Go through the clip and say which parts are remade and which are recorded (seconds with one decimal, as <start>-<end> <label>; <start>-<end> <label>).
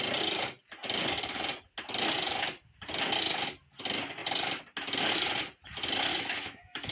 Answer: 0.0-6.1 recorded; 6.1-6.9 remade